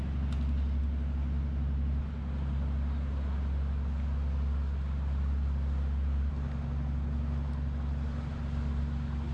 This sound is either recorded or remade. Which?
recorded